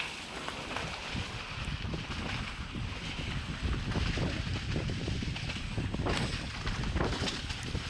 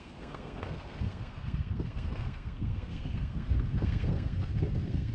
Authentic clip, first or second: first